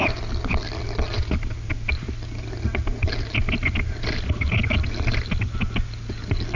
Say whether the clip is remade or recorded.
recorded